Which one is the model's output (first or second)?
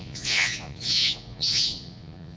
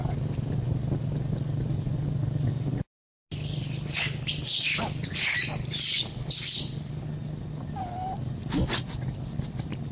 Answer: first